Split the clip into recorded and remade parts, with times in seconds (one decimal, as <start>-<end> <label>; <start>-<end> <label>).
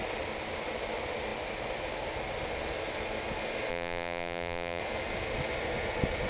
0.0-3.7 recorded; 3.7-4.8 remade; 4.8-6.3 recorded